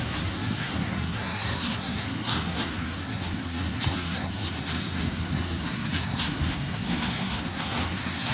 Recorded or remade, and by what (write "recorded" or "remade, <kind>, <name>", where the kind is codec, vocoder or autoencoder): remade, codec, SNAC